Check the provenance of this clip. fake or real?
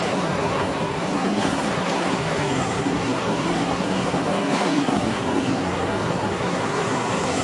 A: fake